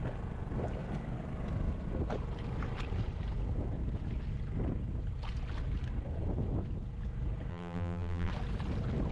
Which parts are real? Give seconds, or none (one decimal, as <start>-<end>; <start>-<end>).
0.0-7.5; 8.3-9.1